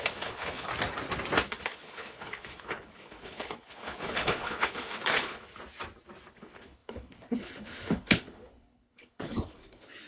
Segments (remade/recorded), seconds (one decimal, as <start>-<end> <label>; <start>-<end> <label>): 0.0-0.7 remade; 0.7-1.6 recorded; 1.6-5.5 remade; 5.5-6.3 recorded; 6.3-10.1 remade